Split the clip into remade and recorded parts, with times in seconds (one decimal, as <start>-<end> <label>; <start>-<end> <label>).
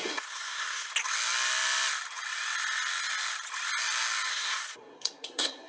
0.0-0.9 remade; 0.9-4.3 recorded; 4.3-5.7 remade